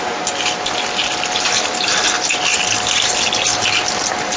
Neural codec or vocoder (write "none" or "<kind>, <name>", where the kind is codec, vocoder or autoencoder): none